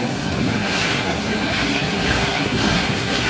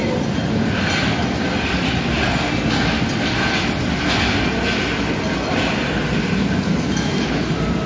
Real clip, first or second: second